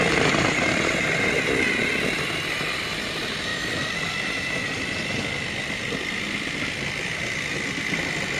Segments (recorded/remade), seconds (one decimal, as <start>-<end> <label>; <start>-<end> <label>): 0.0-8.4 recorded